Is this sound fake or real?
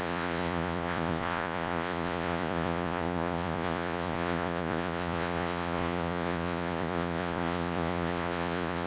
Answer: fake